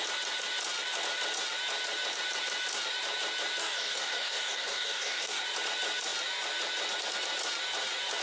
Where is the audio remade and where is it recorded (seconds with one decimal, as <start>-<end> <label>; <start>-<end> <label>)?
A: 0.0-3.6 recorded; 3.6-5.4 remade; 5.4-8.2 recorded